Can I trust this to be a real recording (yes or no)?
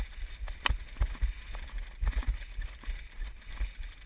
yes